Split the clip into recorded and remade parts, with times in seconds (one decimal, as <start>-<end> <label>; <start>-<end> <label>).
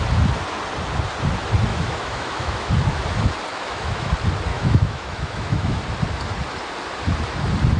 0.0-1.7 recorded; 1.7-2.7 remade; 2.7-3.5 recorded; 3.5-4.1 remade; 4.1-4.5 recorded; 4.5-5.8 remade; 5.8-7.8 recorded